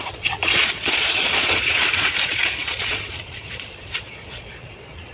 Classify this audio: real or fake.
fake